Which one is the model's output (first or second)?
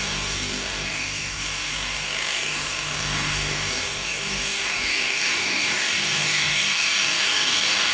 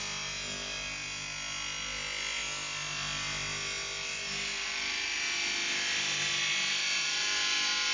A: first